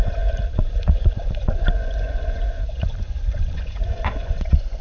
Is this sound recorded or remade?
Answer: remade